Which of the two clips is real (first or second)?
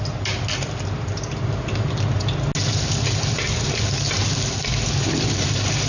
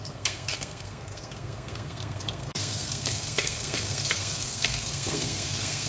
first